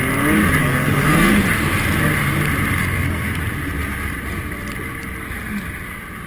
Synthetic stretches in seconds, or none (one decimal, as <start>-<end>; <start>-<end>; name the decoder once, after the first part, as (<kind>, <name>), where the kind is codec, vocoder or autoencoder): 0.6-1.3 (codec, SNAC); 2.8-3.4